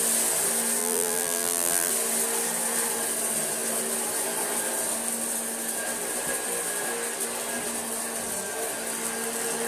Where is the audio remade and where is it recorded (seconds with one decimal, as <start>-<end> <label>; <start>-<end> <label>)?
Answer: 0.0-0.8 recorded; 0.8-1.9 remade; 1.9-9.7 recorded